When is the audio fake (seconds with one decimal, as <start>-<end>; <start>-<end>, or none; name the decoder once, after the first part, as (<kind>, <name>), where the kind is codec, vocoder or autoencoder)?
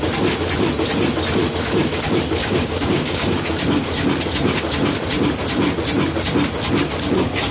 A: 2.4-3.3 (codec, DAC)